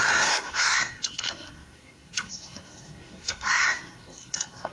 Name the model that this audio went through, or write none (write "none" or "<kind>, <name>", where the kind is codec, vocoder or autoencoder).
codec, SNAC